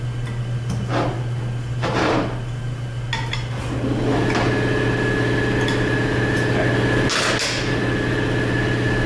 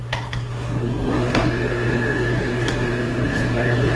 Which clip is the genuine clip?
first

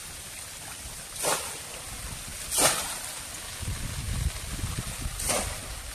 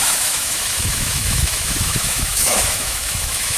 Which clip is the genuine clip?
first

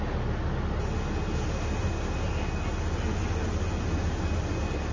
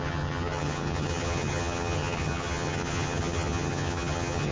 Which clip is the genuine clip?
first